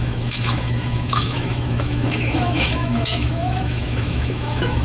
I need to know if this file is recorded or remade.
remade